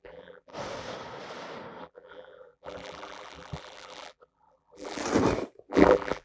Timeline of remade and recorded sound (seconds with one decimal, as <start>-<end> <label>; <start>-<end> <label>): 0.0-0.5 remade; 0.5-1.8 recorded; 1.8-5.0 remade; 5.0-5.7 recorded; 5.7-6.2 remade